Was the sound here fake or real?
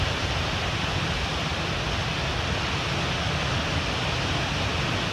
real